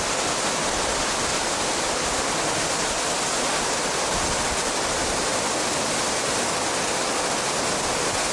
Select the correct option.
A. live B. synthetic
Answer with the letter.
A